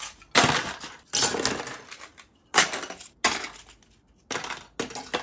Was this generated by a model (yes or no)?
no